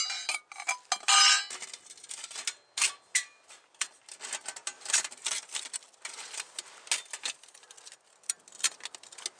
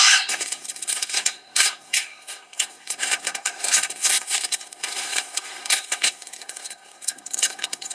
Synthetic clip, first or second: second